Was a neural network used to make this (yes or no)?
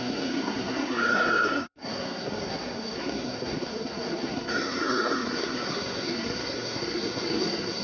yes